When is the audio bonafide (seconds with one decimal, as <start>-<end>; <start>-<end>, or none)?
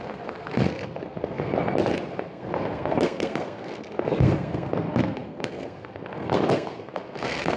1.5-2.1